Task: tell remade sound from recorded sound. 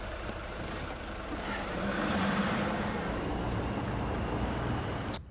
remade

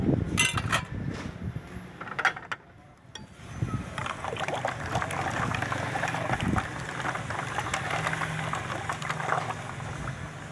recorded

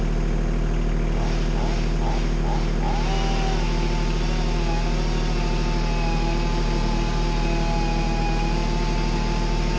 recorded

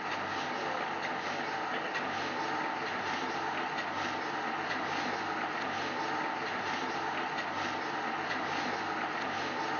recorded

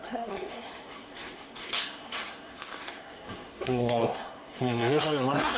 remade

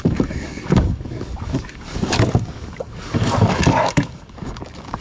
remade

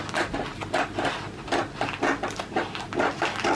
recorded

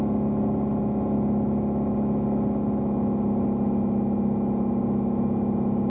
recorded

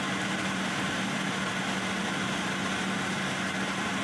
recorded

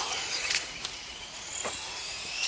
remade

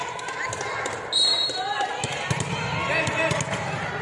recorded